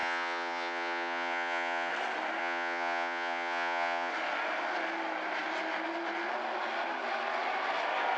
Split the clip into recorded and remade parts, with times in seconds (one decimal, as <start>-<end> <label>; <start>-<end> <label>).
0.0-1.9 remade; 1.9-2.4 recorded; 2.4-4.1 remade; 4.1-8.2 recorded

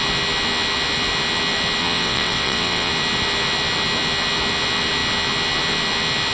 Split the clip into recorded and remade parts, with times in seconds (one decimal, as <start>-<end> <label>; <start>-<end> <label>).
0.0-1.8 recorded; 1.8-2.9 remade; 2.9-6.3 recorded